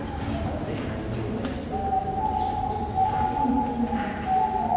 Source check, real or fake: real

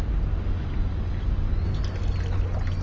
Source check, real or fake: real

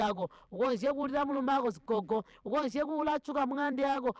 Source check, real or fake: fake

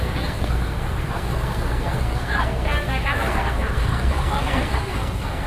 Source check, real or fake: fake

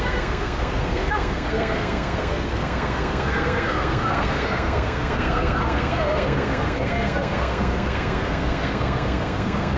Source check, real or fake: fake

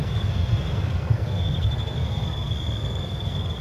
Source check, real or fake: fake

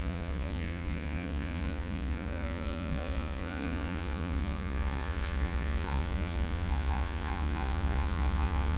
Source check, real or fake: fake